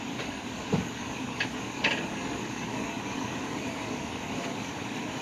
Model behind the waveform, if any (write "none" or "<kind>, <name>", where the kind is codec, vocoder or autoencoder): codec, DAC